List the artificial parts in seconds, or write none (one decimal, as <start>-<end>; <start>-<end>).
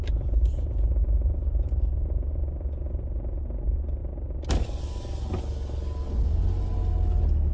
none